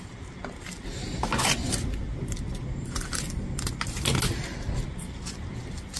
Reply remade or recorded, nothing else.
recorded